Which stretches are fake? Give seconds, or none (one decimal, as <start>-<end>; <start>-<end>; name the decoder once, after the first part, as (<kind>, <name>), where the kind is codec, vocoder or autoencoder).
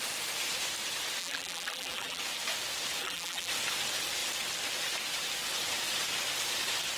1.2-2.2 (vocoder, BigVGAN v2); 3.0-3.5